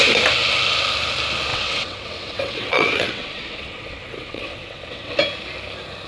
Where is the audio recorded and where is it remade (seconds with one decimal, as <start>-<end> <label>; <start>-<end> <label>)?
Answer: 0.0-1.5 recorded; 1.5-5.2 remade; 5.2-6.1 recorded